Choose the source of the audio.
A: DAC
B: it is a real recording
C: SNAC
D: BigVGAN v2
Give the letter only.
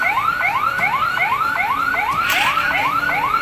D